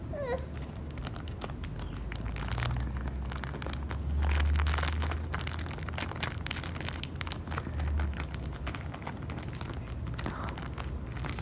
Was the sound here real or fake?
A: real